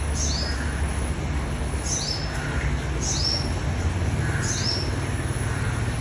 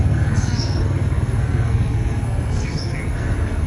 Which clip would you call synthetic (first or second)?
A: second